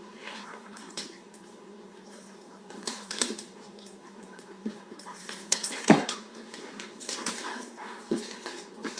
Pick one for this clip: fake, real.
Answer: fake